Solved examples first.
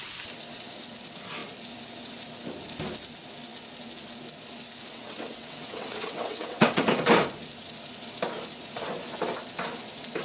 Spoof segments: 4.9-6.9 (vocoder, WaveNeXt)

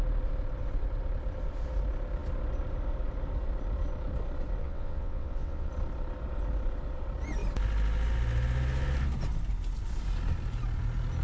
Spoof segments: 4.6-5.7 (vocoder, WaveNeXt)